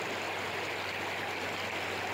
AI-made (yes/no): no